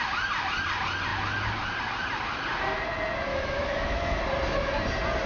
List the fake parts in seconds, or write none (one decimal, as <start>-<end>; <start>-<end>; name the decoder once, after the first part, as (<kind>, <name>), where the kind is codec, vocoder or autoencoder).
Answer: 3.3-4.2 (autoencoder, DAC-VAE)